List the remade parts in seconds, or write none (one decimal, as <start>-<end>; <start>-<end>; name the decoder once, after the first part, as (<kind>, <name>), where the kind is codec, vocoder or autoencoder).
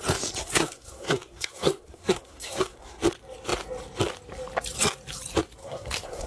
0.4-3.0 (codec, SNAC); 5.6-6.3